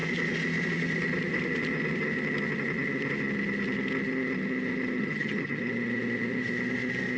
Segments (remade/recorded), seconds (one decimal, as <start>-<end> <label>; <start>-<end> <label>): 0.0-5.0 recorded; 5.0-5.6 remade; 5.6-7.2 recorded

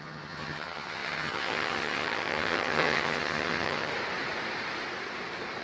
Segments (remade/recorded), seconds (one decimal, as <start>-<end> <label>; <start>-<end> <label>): 0.0-3.9 remade; 3.9-5.6 recorded

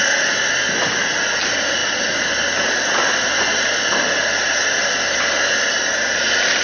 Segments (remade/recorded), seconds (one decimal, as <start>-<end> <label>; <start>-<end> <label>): 0.0-6.6 recorded

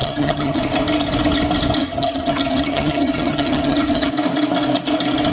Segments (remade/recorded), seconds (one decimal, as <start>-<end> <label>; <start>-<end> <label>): 0.0-0.6 remade; 0.6-1.8 recorded; 1.8-4.1 remade; 4.1-5.3 recorded

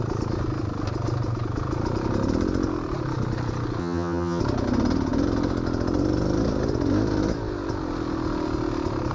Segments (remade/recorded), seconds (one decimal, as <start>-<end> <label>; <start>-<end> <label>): 0.0-3.8 recorded; 3.8-4.4 remade; 4.4-9.1 recorded